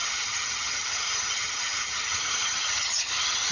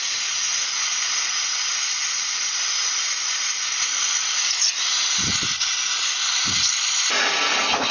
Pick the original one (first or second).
second